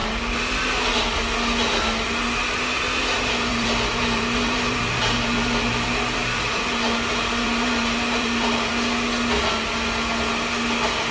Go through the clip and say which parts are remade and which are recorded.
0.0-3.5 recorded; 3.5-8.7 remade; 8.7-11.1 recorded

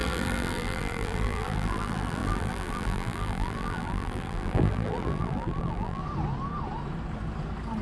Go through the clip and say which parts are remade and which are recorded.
0.0-6.0 remade; 6.0-7.8 recorded

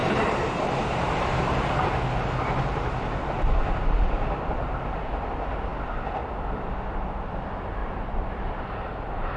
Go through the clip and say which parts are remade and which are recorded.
0.0-2.9 remade; 2.9-7.8 recorded; 7.8-9.4 remade

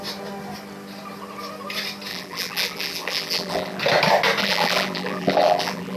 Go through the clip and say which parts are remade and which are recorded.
0.0-2.1 recorded; 2.1-3.8 remade; 3.8-4.4 recorded; 4.4-6.0 remade

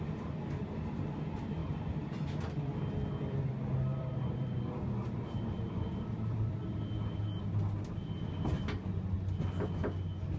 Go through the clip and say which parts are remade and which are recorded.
0.0-1.6 recorded; 1.6-3.5 remade; 3.5-3.9 recorded; 3.9-8.3 remade; 8.3-10.4 recorded